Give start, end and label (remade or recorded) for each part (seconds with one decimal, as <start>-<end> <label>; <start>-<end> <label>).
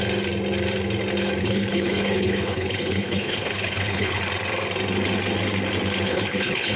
0.0-1.4 recorded; 1.4-4.2 remade; 4.2-6.1 recorded; 6.1-6.8 remade